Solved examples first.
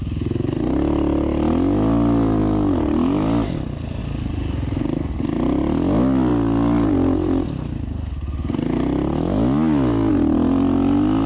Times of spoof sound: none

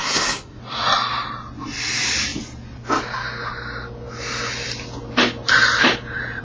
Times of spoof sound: 0.0-0.6

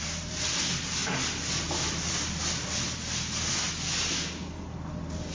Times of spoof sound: none

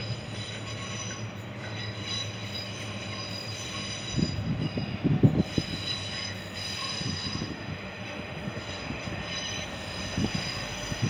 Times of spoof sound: 6.8-9.2; 10.2-11.1

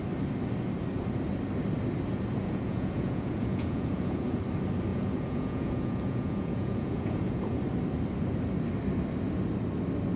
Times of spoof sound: 2.4-4.4; 4.9-7.6